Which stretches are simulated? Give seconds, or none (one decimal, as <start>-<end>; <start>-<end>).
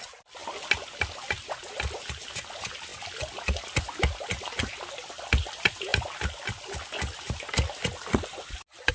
none